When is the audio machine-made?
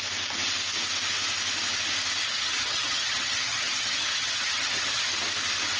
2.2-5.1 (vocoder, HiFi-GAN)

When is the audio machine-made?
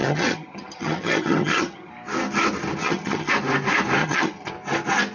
0.0-1.9 (vocoder, HiFi-GAN); 2.8-3.3; 4.0-4.5